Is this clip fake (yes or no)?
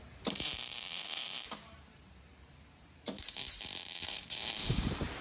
yes